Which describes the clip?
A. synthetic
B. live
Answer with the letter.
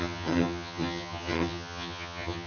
A